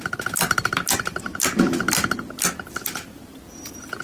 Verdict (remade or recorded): recorded